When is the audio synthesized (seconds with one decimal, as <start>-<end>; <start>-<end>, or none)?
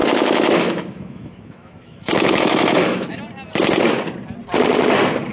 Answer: 0.0-3.2